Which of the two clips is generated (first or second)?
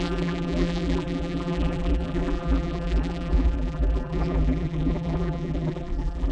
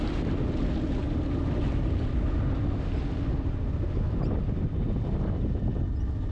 first